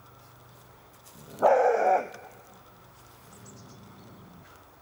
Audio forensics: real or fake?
real